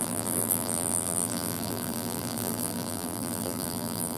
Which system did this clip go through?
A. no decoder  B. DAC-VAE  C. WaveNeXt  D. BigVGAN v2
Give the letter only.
D